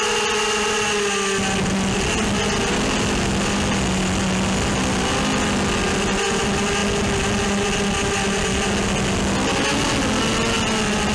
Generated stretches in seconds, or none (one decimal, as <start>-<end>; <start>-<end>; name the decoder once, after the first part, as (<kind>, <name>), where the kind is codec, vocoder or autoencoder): none